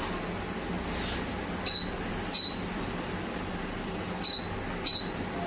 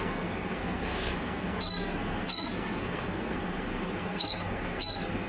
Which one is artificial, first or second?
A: second